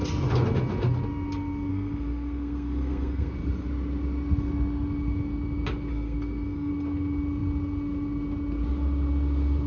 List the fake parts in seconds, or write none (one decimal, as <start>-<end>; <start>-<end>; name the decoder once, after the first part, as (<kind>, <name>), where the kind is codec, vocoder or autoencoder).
1.7-3.3 (codec, SNAC); 5.9-6.7